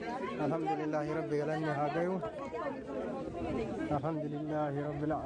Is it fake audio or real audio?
real